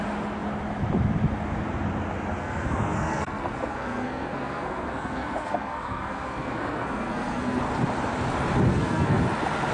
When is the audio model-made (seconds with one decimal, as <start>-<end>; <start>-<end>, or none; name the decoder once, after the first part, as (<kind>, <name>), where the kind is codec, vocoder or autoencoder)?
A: 2.4-7.6 (codec, SNAC); 8.7-9.2